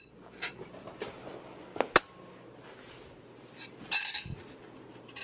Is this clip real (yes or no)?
yes